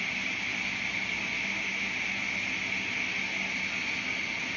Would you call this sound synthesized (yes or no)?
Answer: no